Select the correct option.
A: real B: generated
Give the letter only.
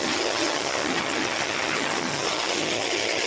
B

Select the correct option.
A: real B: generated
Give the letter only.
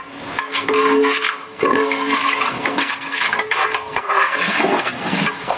B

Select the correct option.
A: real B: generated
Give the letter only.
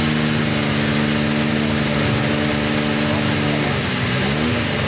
A